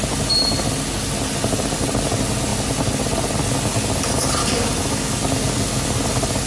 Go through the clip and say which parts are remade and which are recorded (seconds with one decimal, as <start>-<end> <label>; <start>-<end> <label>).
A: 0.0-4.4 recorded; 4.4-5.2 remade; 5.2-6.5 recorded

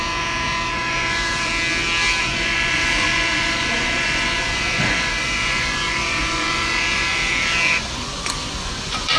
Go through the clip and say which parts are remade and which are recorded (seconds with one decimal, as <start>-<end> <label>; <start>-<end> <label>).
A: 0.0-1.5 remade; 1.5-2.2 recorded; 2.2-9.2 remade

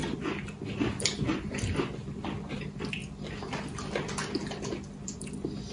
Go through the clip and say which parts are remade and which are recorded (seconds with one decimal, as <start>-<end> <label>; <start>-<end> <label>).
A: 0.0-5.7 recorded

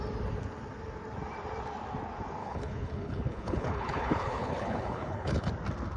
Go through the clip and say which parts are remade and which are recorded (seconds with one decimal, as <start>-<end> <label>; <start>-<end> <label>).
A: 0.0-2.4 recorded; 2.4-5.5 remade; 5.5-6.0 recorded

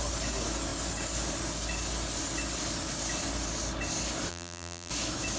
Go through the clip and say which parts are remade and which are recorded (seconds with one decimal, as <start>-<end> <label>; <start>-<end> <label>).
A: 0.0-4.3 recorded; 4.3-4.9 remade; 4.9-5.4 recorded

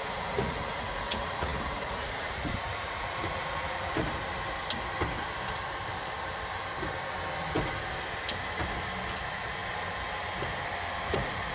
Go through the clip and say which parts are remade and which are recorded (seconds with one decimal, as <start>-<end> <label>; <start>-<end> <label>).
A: 0.0-4.2 remade; 4.2-9.2 recorded; 9.2-9.6 remade; 9.6-11.0 recorded; 11.0-11.5 remade

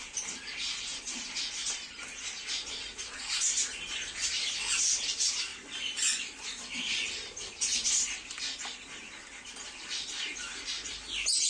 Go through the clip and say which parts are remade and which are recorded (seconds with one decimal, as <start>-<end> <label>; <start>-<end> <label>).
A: 0.0-11.5 recorded

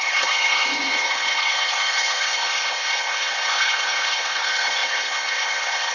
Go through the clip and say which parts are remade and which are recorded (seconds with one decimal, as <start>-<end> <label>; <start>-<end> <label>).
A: 0.0-5.9 remade